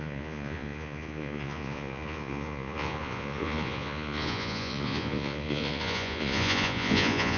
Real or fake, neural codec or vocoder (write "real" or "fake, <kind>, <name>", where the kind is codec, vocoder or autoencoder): fake, vocoder, Vocos